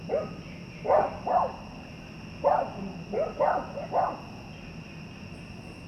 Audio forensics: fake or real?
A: real